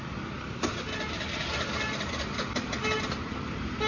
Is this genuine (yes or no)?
yes